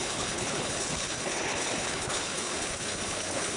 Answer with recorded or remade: remade